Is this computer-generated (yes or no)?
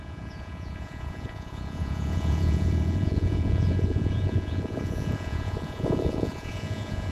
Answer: yes